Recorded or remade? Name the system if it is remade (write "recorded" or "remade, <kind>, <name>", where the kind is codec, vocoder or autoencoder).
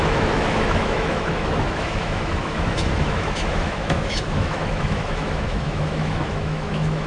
remade, autoencoder, DAC-VAE